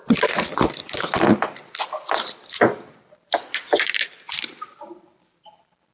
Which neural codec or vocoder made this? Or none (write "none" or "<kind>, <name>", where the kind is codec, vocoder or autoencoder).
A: none